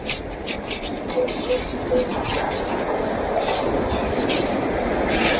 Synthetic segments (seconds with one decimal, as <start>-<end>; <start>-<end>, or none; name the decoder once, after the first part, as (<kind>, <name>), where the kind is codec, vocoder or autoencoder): none

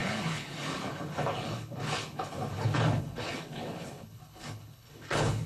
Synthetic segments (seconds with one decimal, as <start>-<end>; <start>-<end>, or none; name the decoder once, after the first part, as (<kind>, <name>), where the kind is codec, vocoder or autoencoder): 0.0-5.5 (codec, HILCodec)

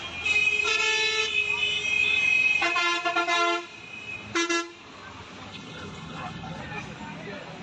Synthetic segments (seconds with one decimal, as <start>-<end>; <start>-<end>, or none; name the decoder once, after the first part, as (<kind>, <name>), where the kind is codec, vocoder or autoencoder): 5.5-6.6 (codec, HILCodec)